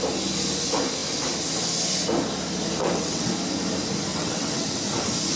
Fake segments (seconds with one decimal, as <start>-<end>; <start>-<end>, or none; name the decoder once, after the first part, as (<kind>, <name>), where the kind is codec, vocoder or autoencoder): 2.8-3.3 (vocoder, WaveNeXt); 4.1-4.8